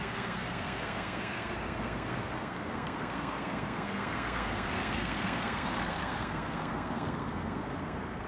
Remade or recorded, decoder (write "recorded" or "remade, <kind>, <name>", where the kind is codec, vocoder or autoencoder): remade, codec, SNAC